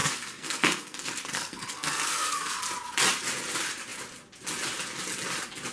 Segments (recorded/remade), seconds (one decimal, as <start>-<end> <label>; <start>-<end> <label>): 0.0-2.6 remade; 2.6-5.7 recorded